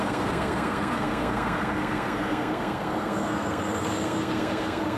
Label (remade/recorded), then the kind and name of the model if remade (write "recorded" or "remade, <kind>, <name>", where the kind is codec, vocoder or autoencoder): remade, codec, SNAC